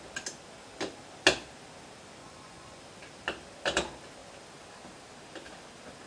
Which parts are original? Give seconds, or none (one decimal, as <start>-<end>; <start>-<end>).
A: 0.0-2.2; 2.8-6.1